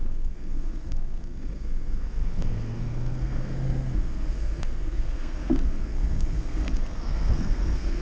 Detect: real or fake fake